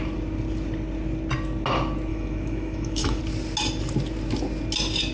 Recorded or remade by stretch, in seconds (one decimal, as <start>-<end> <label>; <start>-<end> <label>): 0.0-2.1 recorded; 2.1-3.2 remade; 3.2-5.1 recorded